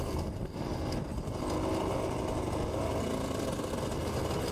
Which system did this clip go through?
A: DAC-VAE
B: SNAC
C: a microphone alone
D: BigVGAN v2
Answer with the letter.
C